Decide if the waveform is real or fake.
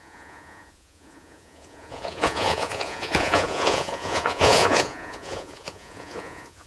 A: fake